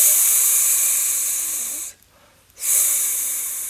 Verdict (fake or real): real